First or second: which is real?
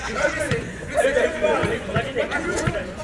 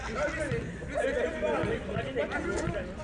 second